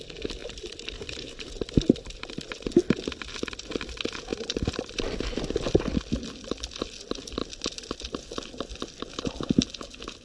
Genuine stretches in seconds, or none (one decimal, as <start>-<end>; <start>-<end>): 0.0-0.4; 2.7-4.3; 5.4-10.2